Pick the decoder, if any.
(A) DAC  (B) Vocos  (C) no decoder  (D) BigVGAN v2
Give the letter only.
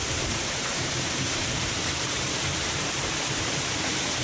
D